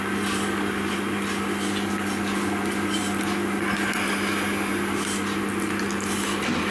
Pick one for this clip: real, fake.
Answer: real